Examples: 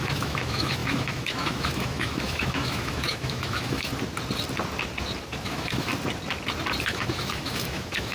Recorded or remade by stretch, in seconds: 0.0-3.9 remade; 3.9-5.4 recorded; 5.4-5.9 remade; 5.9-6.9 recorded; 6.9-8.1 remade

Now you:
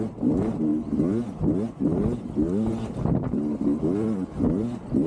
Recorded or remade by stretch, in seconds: 0.0-5.1 recorded

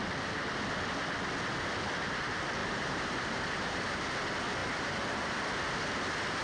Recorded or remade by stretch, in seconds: 0.0-2.6 recorded; 2.6-4.0 remade; 4.0-4.6 recorded; 4.6-5.5 remade; 5.5-6.4 recorded

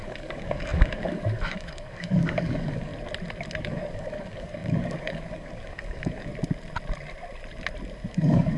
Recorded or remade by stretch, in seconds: 0.0-2.9 remade; 2.9-3.6 recorded; 3.6-6.3 remade; 6.3-8.1 recorded; 8.1-8.6 remade